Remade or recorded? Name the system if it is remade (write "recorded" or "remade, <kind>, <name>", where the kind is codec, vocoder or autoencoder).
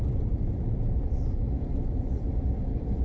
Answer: remade, vocoder, BigVGAN v2